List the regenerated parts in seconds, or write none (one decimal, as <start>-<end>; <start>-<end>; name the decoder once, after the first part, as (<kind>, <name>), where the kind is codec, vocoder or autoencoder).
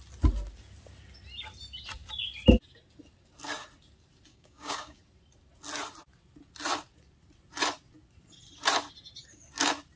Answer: 4.3-5.0 (codec, DAC)